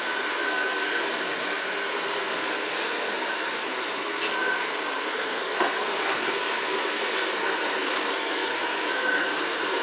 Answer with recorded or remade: remade